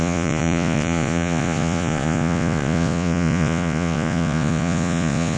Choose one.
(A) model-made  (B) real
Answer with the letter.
A